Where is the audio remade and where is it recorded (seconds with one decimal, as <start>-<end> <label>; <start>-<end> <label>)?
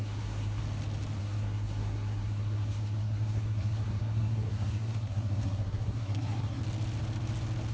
0.0-0.6 remade; 0.6-1.2 recorded; 1.2-6.6 remade; 6.6-7.7 recorded